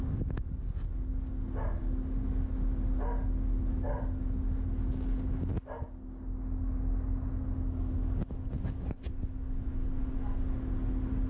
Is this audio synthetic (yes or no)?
no